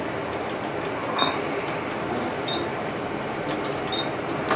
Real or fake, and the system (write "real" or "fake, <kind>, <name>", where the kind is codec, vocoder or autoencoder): real